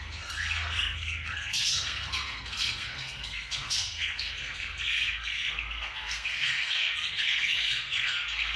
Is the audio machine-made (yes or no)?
yes